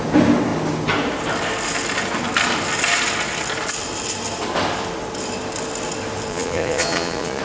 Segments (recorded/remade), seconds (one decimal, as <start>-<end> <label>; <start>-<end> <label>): 0.0-6.3 recorded; 6.3-7.4 remade